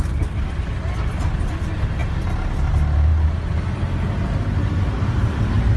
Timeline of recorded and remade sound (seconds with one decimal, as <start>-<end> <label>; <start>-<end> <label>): 0.0-5.8 recorded

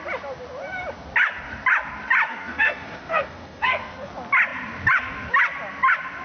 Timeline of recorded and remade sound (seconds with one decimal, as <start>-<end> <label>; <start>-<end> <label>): 0.0-2.3 recorded; 2.3-4.1 remade; 4.1-6.2 recorded